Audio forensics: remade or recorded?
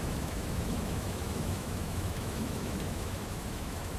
remade